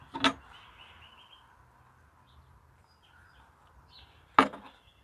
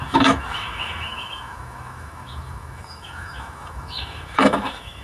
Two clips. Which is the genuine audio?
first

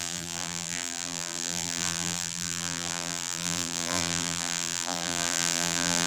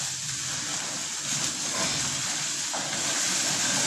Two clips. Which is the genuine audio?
second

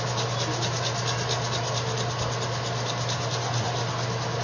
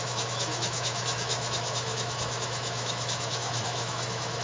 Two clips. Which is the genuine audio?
first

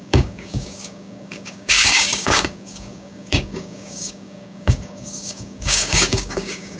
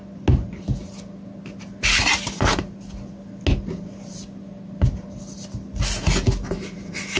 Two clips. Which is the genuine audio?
second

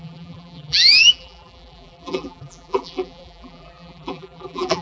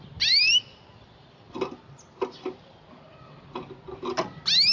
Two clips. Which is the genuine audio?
second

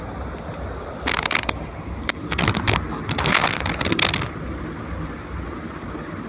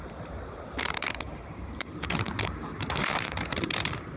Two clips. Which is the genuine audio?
first